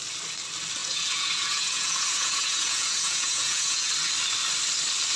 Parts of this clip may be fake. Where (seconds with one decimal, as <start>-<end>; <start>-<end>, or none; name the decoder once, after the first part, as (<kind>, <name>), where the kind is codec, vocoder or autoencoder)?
0.8-3.9 (vocoder, Vocos)